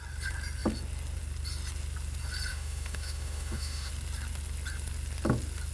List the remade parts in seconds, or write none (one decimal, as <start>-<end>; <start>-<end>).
2.5-3.9